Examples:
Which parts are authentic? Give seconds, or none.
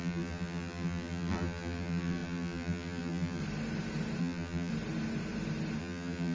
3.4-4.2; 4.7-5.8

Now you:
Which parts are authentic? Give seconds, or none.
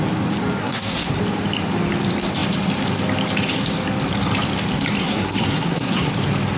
0.0-0.6; 1.2-5.0; 6.1-6.6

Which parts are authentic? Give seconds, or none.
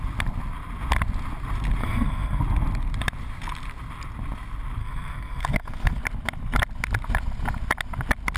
0.0-1.8; 2.4-4.8; 6.0-8.4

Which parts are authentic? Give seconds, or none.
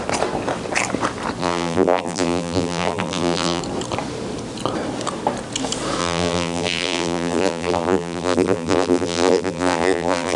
0.0-1.4; 3.6-6.0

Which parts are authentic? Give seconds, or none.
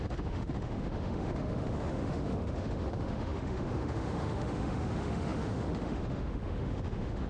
none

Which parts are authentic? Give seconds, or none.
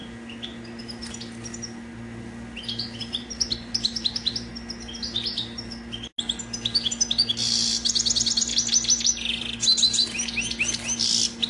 0.0-3.0; 4.5-11.5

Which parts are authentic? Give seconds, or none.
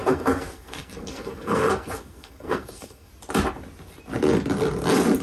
3.1-5.2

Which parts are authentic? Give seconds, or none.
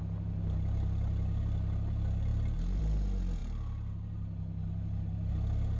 0.0-5.8